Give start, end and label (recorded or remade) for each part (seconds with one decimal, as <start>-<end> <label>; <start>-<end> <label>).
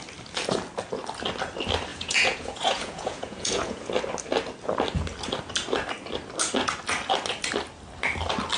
0.0-1.9 recorded; 1.9-3.9 remade; 3.9-8.6 recorded